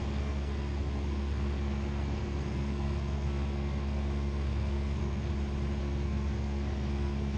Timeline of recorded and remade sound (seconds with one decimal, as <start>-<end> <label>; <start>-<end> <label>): 0.0-5.3 remade; 5.3-5.8 recorded; 5.8-7.4 remade